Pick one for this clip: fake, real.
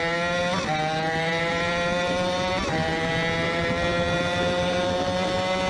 fake